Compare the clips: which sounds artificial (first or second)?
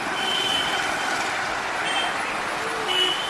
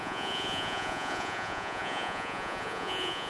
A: second